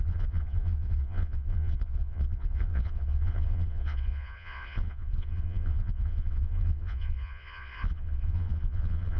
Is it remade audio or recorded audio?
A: remade